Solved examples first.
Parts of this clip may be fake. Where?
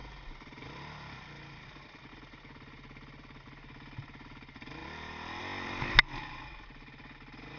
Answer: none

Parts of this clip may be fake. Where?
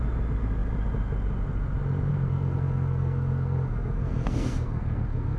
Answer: 2.1-5.4 (codec, SNAC)